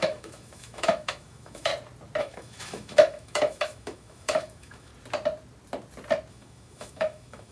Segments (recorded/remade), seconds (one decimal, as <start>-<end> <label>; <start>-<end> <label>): 0.0-1.7 remade; 1.7-2.2 recorded; 2.2-4.9 remade; 4.9-6.3 recorded; 6.3-7.5 remade